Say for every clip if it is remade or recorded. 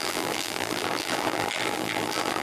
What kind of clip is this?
remade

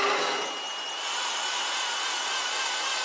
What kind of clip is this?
recorded